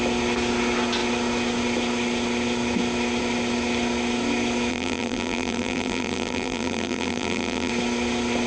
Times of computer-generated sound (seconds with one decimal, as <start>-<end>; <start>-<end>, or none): 4.7-7.7